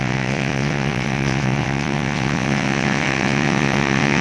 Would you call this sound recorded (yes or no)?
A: no